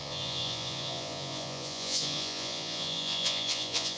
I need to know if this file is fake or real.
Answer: fake